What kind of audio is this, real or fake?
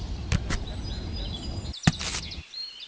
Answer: real